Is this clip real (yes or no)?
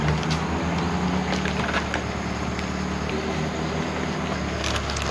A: yes